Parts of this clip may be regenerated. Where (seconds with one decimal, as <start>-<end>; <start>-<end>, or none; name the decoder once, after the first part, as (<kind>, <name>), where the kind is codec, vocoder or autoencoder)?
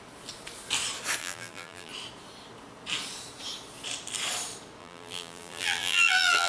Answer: 1.2-1.9 (vocoder, BigVGAN v2); 4.8-6.5